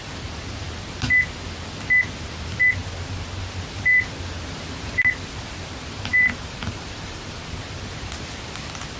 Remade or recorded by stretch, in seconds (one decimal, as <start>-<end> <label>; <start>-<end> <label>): 0.0-3.9 recorded; 3.9-5.0 remade; 5.0-6.1 recorded; 6.1-7.4 remade; 7.4-9.0 recorded